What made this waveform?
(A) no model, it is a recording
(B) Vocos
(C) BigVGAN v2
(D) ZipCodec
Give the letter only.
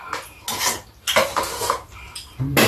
A